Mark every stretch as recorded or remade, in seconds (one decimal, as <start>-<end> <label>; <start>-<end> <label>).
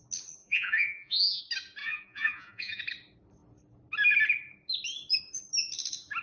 0.0-0.4 recorded; 0.4-1.4 remade; 1.4-1.8 recorded; 1.8-2.8 remade; 2.8-6.2 recorded